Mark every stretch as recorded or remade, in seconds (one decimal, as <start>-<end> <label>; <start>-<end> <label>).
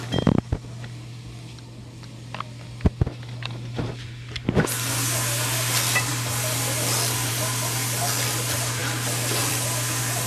0.0-10.3 recorded